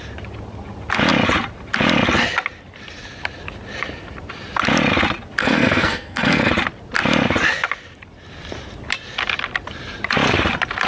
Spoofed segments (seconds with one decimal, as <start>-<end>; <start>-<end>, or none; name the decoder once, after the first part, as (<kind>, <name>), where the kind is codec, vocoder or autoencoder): 5.4-6.5 (codec, SNAC)